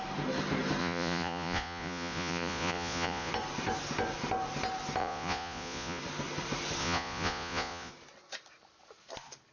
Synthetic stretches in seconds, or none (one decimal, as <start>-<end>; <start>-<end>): 0.8-3.3; 5.0-6.0; 6.8-7.9